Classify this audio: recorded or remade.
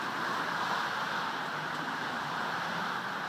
recorded